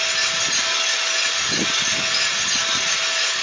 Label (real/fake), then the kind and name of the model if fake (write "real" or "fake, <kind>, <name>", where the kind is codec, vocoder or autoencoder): real